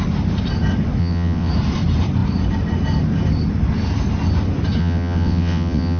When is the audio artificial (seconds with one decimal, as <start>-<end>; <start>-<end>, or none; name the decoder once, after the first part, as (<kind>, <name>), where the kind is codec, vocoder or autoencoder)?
1.0-1.5 (vocoder, WaveNeXt); 4.8-6.0

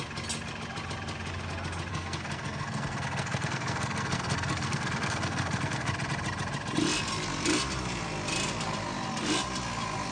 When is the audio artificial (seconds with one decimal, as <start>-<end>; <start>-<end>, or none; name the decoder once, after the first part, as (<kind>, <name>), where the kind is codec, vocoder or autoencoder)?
1.9-5.9 (codec, SNAC)

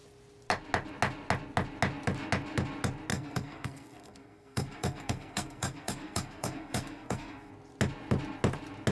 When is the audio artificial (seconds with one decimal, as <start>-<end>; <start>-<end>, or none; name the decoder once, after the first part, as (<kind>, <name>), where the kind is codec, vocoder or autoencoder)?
3.1-7.5 (codec, SNAC)

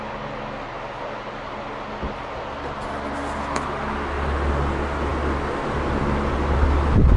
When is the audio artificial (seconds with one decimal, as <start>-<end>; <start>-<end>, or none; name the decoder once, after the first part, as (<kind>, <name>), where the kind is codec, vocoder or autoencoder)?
none